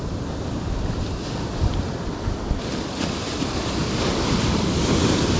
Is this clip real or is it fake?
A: fake